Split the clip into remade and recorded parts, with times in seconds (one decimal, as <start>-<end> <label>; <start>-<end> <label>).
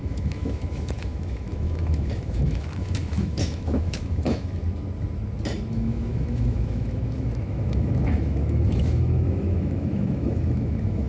0.0-4.6 remade; 4.6-5.7 recorded; 5.7-11.1 remade